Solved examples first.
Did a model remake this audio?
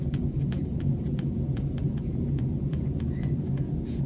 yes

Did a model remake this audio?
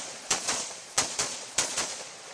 yes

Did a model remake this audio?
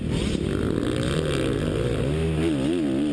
no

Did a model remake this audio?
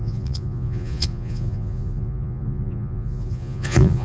yes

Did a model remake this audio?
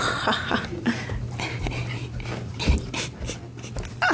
no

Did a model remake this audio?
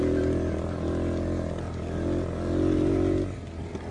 no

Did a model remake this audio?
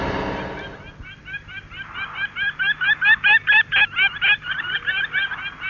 no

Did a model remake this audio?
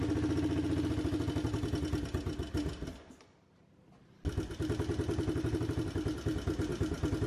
no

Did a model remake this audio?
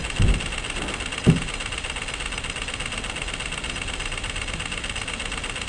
no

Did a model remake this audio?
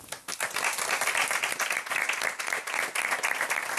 no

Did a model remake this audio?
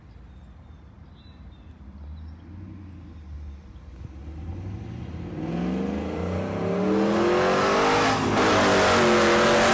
no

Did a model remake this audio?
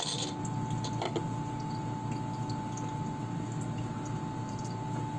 no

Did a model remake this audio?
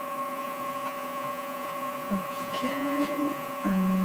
yes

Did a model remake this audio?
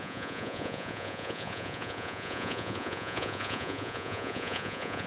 yes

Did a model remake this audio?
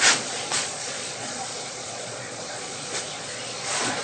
yes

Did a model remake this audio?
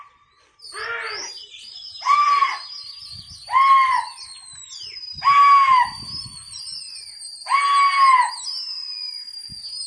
no